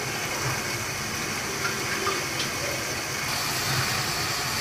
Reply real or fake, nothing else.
real